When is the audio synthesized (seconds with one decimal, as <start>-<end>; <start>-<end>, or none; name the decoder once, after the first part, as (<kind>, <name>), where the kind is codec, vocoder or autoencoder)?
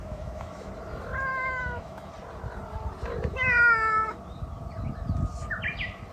0.0-0.7 (autoencoder, DAC-VAE); 1.3-2.1